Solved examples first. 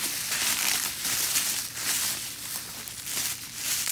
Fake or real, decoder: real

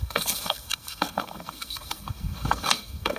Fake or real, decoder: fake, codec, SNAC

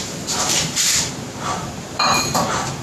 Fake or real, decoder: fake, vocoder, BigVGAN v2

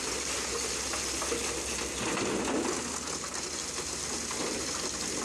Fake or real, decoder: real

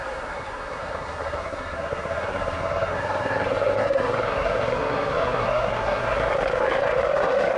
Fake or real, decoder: fake, codec, SNAC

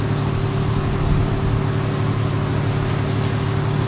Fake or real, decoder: real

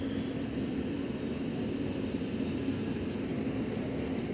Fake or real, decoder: real